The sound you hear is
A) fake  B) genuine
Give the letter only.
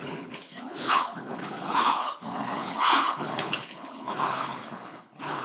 A